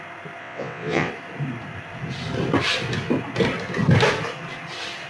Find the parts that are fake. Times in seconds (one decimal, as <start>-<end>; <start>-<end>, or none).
0.4-1.1